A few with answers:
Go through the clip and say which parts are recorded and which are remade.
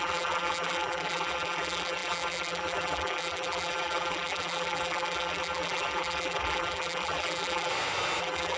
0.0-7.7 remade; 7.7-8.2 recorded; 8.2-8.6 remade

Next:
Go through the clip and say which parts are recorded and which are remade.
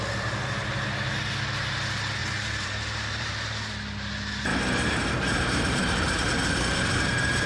0.0-2.2 recorded; 2.2-3.3 remade; 3.3-4.5 recorded; 4.5-7.5 remade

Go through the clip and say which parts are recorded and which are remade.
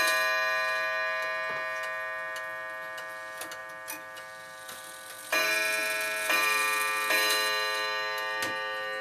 0.0-9.0 recorded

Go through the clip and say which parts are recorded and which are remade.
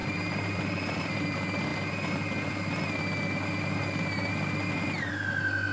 0.0-1.2 remade; 1.2-5.7 recorded